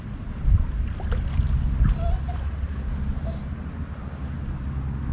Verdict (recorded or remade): recorded